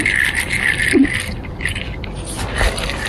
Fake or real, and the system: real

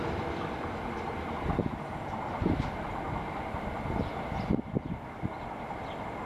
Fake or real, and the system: fake, vocoder, BigVGAN v2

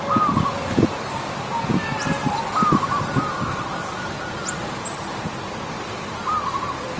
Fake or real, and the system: fake, vocoder, BigVGAN v2